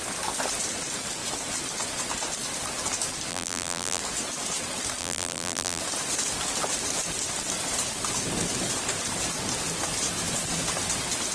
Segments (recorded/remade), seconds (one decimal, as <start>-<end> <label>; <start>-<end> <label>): 0.0-3.3 recorded; 3.3-4.0 remade; 4.0-5.0 recorded; 5.0-5.8 remade; 5.8-11.3 recorded